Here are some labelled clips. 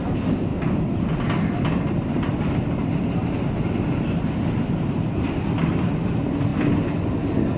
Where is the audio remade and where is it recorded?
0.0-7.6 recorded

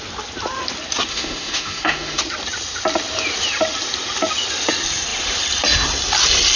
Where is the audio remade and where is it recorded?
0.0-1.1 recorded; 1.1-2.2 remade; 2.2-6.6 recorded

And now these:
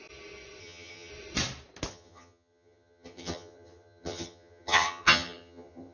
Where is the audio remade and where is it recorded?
0.0-0.6 recorded; 0.6-1.1 remade; 1.1-1.9 recorded; 1.9-5.9 remade

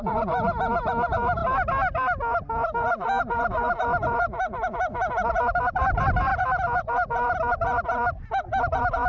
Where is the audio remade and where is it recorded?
0.0-9.1 recorded

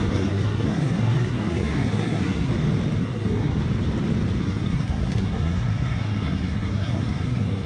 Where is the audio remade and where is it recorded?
0.0-2.5 remade; 2.5-3.0 recorded; 3.0-3.6 remade; 3.6-4.4 recorded; 4.4-7.7 remade

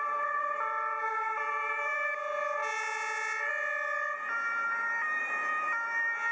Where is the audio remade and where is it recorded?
0.0-6.3 recorded

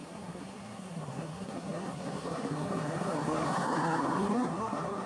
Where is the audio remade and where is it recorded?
0.0-5.1 remade